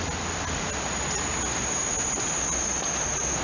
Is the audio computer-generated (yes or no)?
no